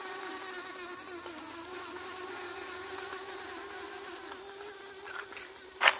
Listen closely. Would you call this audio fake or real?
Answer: real